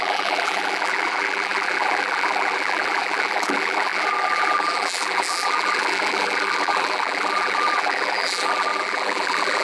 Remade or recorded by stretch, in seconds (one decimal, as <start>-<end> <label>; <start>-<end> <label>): 0.0-9.6 remade